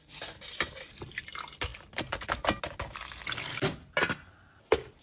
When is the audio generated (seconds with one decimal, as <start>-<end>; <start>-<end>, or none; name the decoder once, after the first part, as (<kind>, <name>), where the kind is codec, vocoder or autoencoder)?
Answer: none